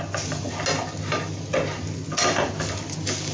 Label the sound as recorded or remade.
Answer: recorded